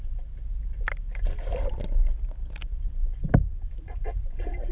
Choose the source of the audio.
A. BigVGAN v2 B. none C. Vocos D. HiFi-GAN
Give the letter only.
B